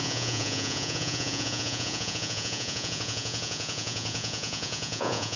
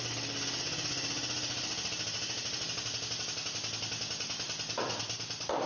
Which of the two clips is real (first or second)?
second